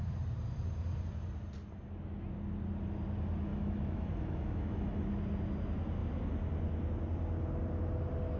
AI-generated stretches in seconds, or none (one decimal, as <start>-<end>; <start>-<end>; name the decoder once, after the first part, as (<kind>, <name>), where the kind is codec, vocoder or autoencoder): 3.5-5.0 (autoencoder, DAC-VAE)